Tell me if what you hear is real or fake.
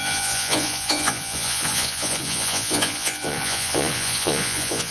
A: fake